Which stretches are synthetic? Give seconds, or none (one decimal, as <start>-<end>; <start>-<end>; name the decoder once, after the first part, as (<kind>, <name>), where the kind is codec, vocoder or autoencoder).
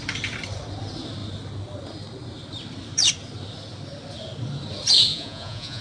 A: 5.1-5.8 (vocoder, Vocos)